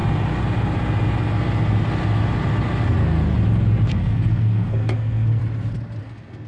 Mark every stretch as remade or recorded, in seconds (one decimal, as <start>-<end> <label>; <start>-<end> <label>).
0.0-3.9 recorded; 3.9-5.4 remade; 5.4-6.0 recorded; 6.0-6.5 remade